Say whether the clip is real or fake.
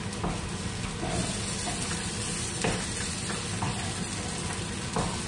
real